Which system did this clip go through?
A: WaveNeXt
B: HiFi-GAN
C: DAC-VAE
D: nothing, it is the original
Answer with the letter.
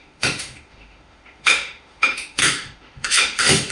C